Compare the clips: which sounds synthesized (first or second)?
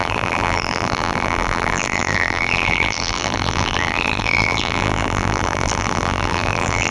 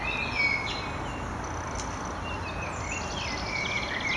first